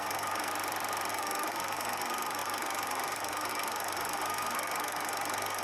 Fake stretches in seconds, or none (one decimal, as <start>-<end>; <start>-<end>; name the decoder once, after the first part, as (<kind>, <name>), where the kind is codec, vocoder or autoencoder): 0.0-0.5 (codec, SNAC); 1.1-5.6